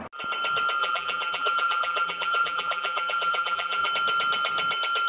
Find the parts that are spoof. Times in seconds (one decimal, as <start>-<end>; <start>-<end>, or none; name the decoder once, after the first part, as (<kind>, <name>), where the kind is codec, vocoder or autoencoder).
0.8-3.9 (vocoder, BigVGAN v2)